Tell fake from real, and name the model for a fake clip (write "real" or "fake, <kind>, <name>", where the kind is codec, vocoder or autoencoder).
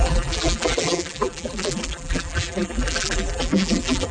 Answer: fake, vocoder, BigVGAN v2